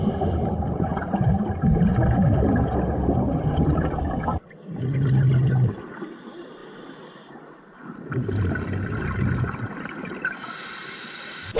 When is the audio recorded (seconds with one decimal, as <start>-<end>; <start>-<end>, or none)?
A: 0.9-3.6